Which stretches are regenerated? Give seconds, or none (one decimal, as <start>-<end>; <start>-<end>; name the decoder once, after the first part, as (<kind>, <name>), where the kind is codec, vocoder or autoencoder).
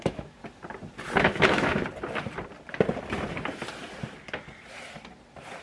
0.0-0.4 (autoencoder, DAC-VAE); 1.2-1.8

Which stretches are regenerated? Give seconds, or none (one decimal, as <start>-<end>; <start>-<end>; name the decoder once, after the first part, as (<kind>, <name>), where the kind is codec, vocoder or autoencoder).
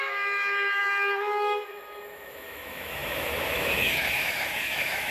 0.0-5.1 (autoencoder, DAC-VAE)